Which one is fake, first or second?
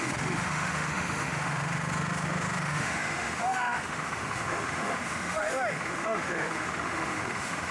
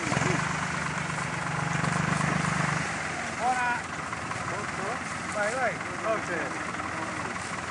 first